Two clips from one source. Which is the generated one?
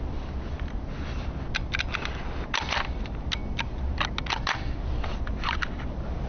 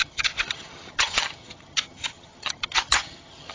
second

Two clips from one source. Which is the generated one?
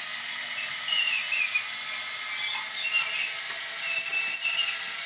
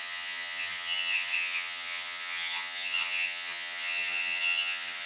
second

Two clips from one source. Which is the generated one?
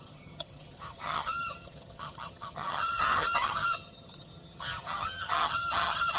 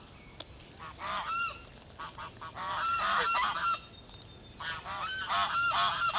first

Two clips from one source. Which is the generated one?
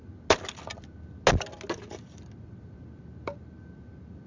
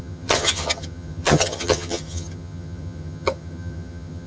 second